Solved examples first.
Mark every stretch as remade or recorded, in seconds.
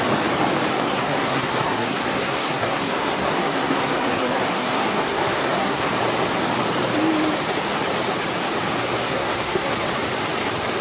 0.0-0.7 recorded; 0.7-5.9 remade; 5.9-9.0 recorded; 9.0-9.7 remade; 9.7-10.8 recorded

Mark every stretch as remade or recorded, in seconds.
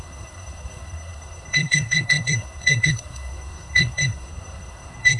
0.0-5.2 remade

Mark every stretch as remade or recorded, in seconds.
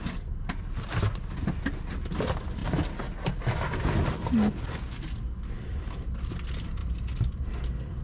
0.0-8.0 recorded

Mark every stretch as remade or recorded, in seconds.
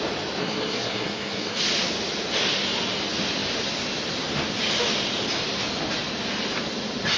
0.0-0.4 recorded; 0.4-1.6 remade; 1.6-7.2 recorded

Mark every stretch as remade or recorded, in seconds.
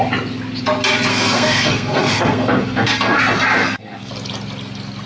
0.0-1.1 recorded; 1.1-3.2 remade; 3.2-3.6 recorded; 3.6-4.1 remade; 4.1-5.1 recorded